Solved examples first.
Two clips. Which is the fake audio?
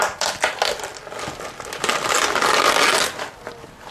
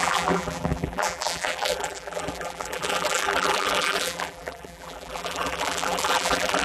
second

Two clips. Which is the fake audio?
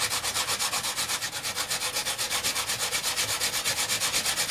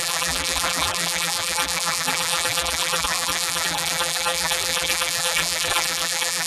second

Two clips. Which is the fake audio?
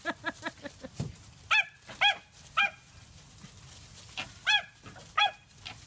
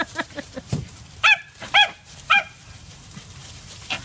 second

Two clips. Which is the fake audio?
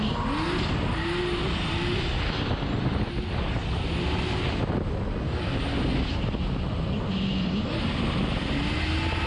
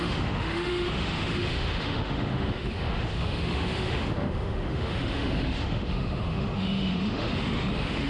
second